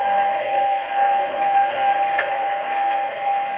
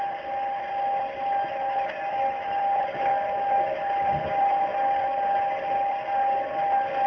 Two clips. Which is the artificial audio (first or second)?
first